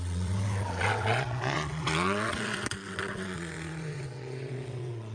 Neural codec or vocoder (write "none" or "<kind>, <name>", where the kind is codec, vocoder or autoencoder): vocoder, WaveNeXt